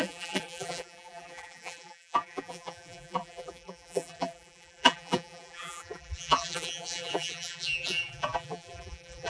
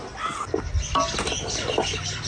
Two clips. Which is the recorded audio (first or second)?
second